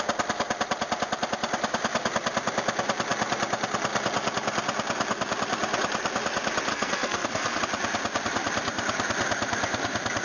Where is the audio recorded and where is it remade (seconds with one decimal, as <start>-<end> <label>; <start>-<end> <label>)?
0.0-6.7 recorded; 6.7-7.6 remade; 7.6-10.2 recorded

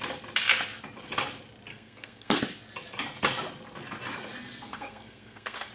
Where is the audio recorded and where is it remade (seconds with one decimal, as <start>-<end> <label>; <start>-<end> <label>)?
0.0-1.7 recorded; 1.7-2.4 remade; 2.4-4.7 recorded; 4.7-5.7 remade

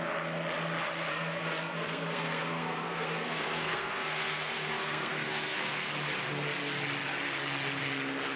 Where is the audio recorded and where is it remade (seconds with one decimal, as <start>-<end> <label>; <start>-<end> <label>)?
0.0-1.1 recorded; 1.1-5.9 remade; 5.9-8.4 recorded